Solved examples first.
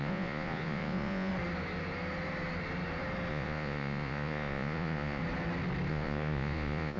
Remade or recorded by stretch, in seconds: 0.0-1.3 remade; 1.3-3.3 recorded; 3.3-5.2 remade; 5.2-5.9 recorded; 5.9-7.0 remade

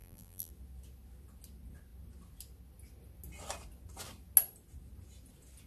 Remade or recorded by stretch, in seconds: 0.0-0.5 remade; 0.5-5.7 recorded

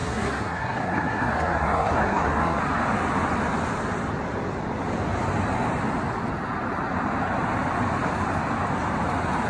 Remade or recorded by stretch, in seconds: 0.0-2.6 remade; 2.6-9.5 recorded

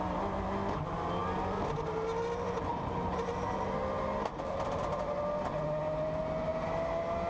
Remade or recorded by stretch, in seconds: 0.0-7.3 recorded

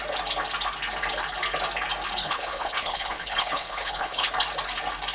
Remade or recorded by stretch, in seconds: 0.0-2.2 recorded; 2.2-4.3 remade; 4.3-5.1 recorded